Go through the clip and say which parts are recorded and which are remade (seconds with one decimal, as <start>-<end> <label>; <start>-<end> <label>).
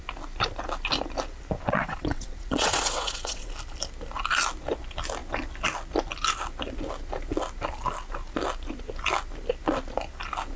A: 0.0-1.6 recorded; 1.6-3.5 remade; 3.5-10.6 recorded